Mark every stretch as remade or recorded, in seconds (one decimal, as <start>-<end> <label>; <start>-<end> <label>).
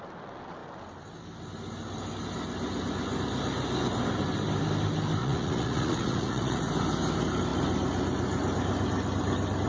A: 0.0-5.2 recorded; 5.2-6.6 remade; 6.6-9.7 recorded